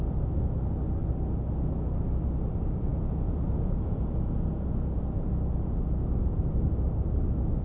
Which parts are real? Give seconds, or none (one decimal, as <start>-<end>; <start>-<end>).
0.0-2.9; 6.5-7.6